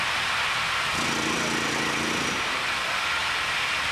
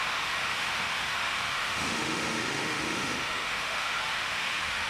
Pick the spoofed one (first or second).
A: second